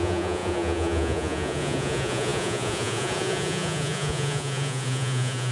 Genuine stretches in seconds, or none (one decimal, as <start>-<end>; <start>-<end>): none